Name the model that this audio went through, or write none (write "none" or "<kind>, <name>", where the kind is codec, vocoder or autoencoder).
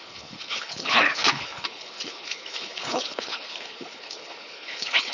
codec, HILCodec